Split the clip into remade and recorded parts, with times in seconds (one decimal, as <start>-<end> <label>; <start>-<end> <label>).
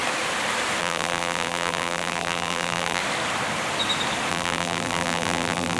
0.0-0.8 recorded; 0.8-3.0 remade; 3.0-4.3 recorded; 4.3-5.8 remade